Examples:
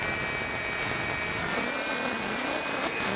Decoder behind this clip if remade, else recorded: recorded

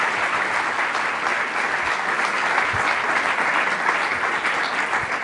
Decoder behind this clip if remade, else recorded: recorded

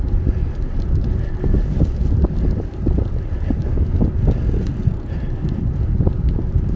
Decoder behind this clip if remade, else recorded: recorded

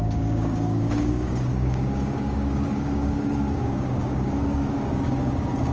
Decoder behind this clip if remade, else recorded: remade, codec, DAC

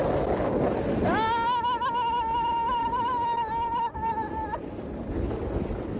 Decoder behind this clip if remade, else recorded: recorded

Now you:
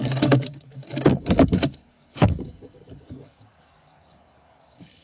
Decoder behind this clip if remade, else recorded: remade, codec, DAC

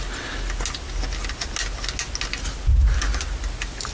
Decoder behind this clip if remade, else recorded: recorded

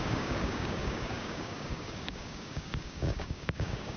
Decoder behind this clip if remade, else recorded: remade, codec, DAC